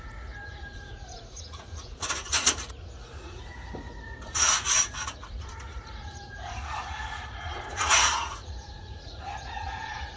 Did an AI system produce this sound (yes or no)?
yes